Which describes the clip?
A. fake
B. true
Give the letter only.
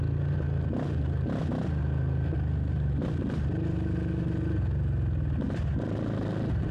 B